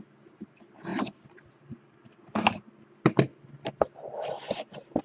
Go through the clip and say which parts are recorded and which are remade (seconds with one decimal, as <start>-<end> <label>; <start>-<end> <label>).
0.0-0.9 recorded; 0.9-1.5 remade; 1.5-3.3 recorded; 3.3-5.0 remade